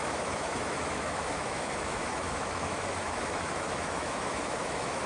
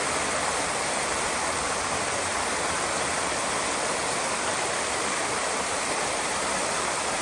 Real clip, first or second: second